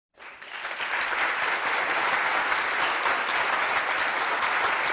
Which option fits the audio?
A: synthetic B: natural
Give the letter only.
B